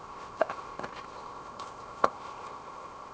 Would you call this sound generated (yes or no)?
yes